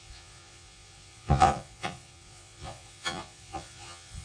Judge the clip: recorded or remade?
remade